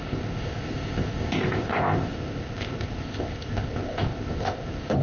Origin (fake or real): fake